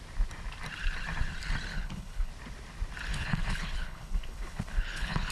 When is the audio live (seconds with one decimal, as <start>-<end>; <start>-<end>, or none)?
0.0-1.7; 2.3-3.1